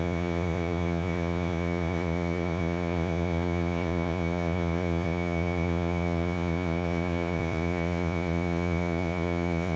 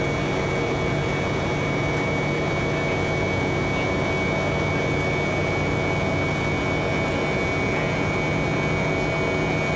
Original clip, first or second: second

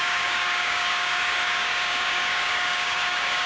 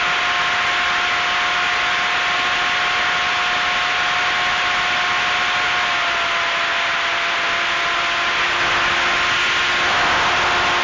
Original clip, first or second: second